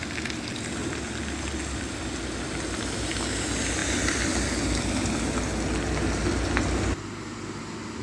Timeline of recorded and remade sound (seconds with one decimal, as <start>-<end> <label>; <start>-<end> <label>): 0.0-8.0 recorded